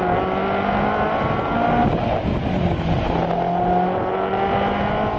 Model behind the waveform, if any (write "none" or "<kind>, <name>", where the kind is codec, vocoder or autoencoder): none